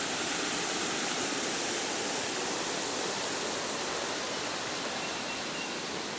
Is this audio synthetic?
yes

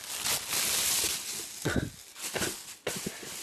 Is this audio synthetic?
no